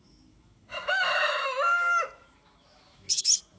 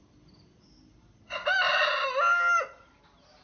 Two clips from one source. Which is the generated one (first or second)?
first